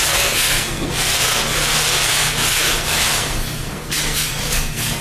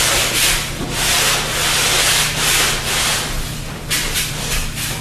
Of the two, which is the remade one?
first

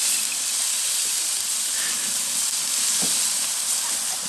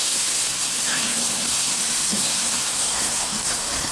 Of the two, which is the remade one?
second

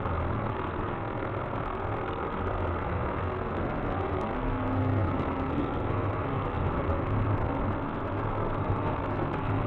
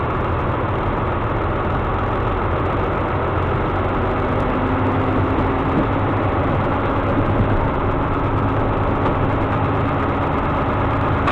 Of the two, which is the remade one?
first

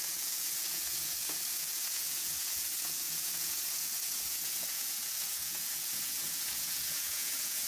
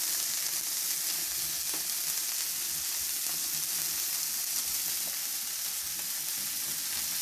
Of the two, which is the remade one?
first